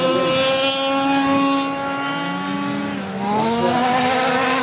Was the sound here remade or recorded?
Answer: recorded